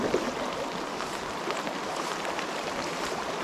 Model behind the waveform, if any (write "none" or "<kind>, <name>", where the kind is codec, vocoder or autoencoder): none